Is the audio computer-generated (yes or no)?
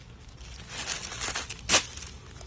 no